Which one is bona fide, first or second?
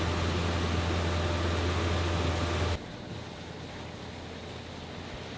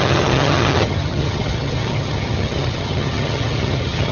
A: first